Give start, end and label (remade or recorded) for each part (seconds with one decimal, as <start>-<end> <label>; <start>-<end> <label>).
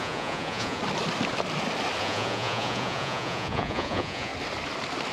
0.0-0.8 remade; 0.8-2.0 recorded; 2.0-4.3 remade; 4.3-5.1 recorded